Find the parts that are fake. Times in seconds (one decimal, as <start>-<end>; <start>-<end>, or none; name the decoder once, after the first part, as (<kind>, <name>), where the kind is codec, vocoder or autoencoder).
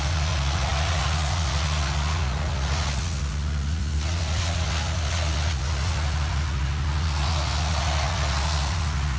0.0-9.2 (vocoder, Vocos)